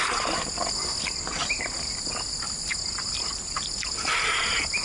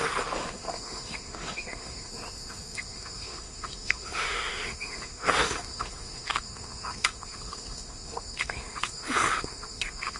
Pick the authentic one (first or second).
first